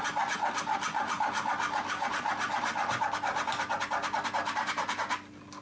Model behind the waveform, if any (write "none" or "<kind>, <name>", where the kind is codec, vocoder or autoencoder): none